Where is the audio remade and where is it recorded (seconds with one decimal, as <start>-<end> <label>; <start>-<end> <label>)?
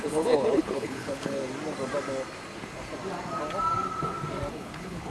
0.0-1.4 remade; 1.4-4.5 recorded; 4.5-5.1 remade